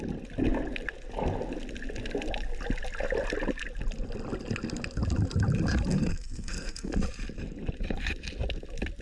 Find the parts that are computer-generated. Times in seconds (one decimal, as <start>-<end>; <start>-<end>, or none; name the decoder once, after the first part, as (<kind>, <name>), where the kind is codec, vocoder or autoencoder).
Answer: 5.9-6.9 (codec, SNAC)